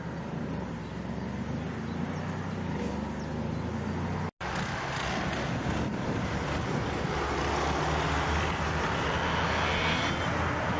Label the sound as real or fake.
real